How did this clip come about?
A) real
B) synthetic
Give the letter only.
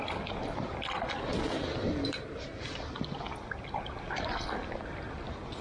A